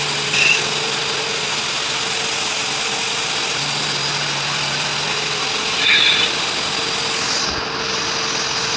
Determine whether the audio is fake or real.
real